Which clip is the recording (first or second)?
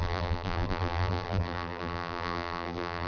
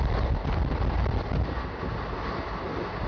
second